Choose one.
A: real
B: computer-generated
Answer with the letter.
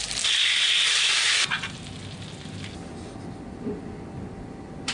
A